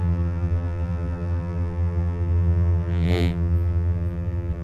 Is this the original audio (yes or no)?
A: no